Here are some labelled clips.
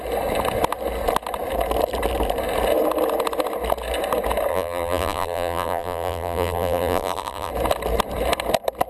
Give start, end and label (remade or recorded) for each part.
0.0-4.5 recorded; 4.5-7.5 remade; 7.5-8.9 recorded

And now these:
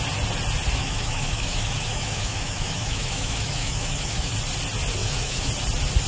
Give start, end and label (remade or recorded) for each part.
0.0-0.8 recorded; 0.8-4.3 remade; 4.3-5.0 recorded; 5.0-5.5 remade; 5.5-6.1 recorded